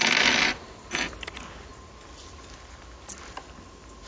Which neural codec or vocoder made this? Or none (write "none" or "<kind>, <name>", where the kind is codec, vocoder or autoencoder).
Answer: none